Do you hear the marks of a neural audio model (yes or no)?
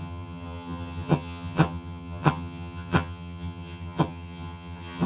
yes